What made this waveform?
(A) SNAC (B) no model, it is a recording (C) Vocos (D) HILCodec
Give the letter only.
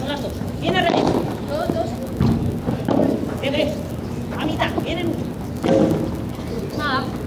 B